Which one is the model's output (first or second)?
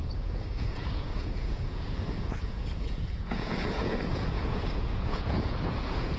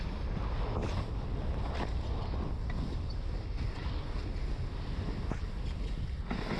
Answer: first